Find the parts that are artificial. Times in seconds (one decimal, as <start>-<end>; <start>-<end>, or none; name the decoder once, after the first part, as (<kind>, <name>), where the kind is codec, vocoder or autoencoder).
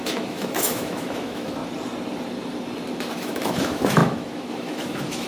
0.0-1.6 (autoencoder, DAC-VAE); 3.1-5.3